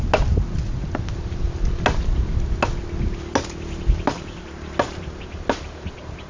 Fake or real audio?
real